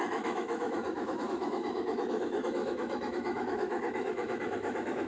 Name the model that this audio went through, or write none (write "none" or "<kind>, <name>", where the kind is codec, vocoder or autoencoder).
autoencoder, DAC-VAE